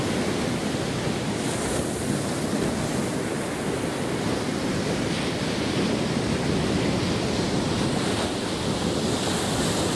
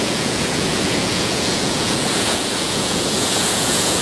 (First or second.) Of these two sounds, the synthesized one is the second